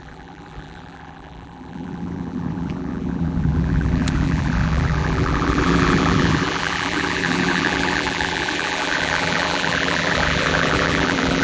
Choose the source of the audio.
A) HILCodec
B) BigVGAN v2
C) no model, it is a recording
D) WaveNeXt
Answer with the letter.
B